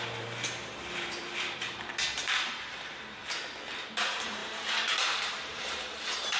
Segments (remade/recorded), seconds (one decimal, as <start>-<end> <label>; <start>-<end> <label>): 0.0-2.2 remade; 2.2-2.7 recorded; 2.7-3.2 remade; 3.2-4.0 recorded; 4.0-6.4 remade